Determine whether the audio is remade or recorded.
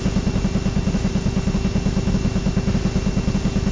recorded